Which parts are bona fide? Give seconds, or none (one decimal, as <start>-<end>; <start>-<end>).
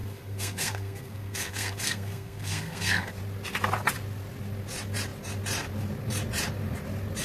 3.1-7.2